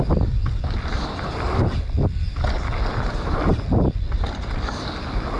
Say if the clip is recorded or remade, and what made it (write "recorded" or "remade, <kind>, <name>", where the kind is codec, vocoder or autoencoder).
recorded